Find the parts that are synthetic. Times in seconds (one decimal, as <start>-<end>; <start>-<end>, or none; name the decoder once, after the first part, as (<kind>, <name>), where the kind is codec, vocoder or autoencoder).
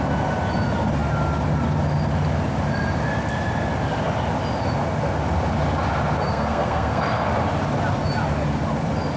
6.3-7.0 (codec, SNAC)